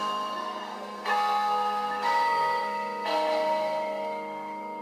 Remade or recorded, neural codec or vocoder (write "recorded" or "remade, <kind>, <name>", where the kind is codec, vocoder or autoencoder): remade, codec, SNAC